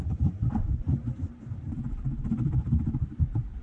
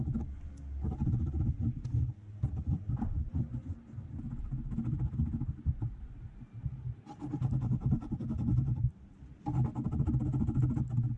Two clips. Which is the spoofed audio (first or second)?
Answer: first